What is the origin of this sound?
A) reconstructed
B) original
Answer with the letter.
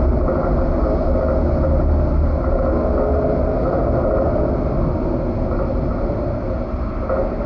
B